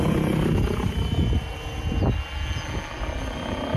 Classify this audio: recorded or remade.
recorded